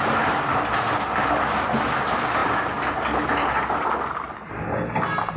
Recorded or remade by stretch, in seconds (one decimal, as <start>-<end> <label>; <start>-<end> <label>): 0.0-5.4 recorded